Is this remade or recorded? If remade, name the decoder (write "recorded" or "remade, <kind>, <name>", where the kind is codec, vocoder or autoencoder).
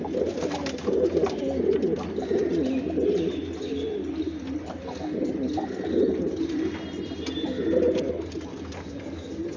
recorded